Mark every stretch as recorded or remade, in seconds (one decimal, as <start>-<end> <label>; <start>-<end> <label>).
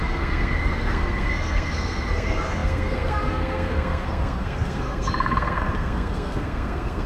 0.0-7.1 remade